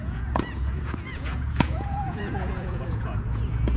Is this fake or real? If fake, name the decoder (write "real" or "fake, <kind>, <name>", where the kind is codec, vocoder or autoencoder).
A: fake, vocoder, Vocos